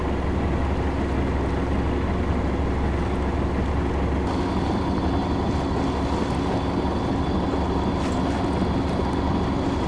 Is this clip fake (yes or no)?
no